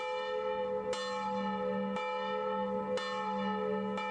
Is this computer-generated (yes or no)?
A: no